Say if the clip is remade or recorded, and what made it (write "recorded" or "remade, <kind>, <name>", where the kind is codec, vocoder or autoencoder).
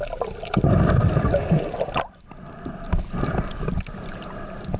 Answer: remade, vocoder, BigVGAN v2